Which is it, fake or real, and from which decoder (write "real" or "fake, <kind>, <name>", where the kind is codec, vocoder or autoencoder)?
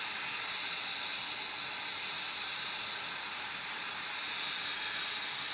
real